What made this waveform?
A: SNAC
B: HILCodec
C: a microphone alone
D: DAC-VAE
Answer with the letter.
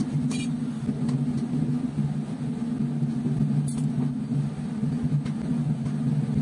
C